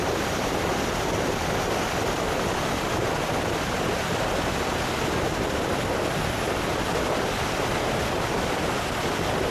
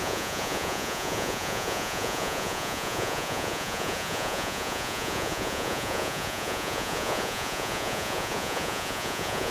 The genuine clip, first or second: first